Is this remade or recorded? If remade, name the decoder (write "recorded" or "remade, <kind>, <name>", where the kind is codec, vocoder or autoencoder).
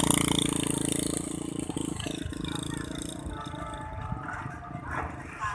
recorded